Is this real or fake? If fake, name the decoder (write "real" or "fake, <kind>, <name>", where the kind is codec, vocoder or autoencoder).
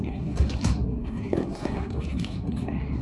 fake, codec, SNAC